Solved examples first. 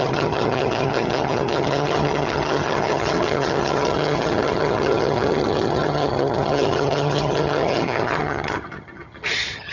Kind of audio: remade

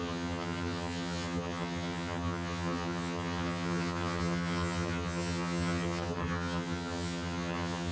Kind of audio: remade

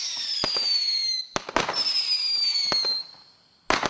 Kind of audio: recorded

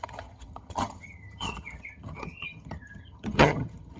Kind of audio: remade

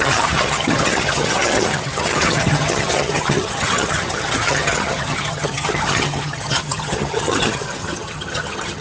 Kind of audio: remade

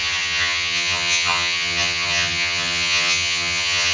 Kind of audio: remade